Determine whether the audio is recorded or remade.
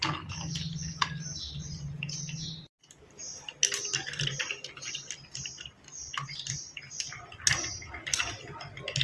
recorded